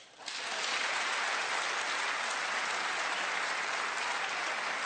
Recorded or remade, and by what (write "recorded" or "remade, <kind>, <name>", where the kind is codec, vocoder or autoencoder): recorded